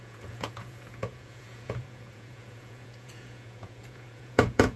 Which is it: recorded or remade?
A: remade